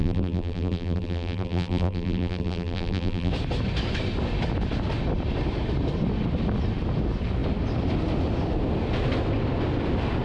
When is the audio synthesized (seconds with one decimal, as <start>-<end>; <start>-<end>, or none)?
0.0-3.3